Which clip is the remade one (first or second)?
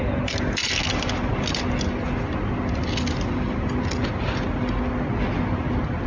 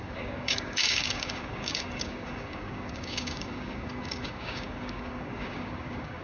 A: second